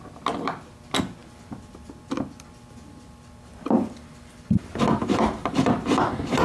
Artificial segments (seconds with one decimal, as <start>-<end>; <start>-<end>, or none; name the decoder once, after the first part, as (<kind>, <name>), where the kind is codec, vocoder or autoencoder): 1.2-5.0 (vocoder, BigVGAN v2); 5.4-6.4